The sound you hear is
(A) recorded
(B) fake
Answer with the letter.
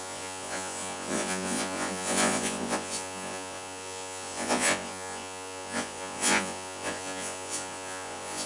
B